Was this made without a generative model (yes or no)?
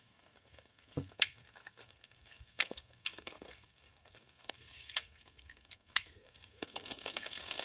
no